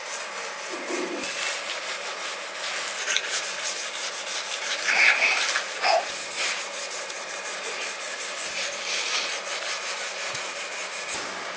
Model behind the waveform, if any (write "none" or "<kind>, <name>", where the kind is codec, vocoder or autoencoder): none